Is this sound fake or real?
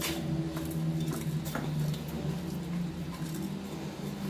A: real